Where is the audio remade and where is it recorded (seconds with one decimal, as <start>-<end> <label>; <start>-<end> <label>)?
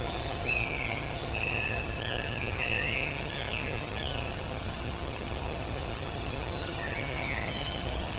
0.0-8.2 remade